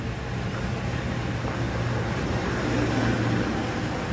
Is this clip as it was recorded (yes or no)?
yes